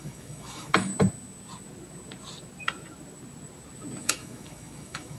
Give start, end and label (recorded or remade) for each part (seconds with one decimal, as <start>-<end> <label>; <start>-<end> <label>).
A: 0.0-0.9 remade; 0.9-4.0 recorded; 4.0-5.2 remade